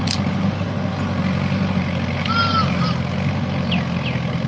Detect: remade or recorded recorded